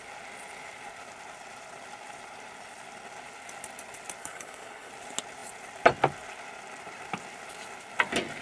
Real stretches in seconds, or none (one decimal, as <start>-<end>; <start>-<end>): 0.0-4.2; 4.9-8.4